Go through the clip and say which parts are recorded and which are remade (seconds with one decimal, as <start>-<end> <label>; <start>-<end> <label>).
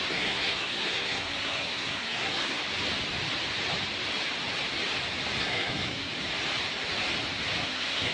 0.0-2.6 remade; 2.6-5.4 recorded; 5.4-6.1 remade; 6.1-7.6 recorded; 7.6-8.1 remade